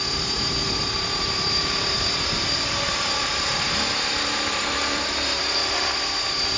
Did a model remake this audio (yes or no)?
yes